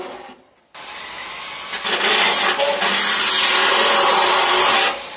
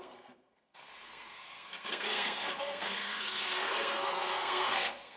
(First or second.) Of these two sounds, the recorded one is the first